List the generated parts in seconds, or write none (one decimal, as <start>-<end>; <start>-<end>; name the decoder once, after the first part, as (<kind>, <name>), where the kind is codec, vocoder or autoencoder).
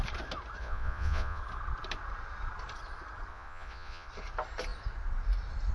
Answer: 0.6-1.4 (vocoder, Vocos); 3.3-4.1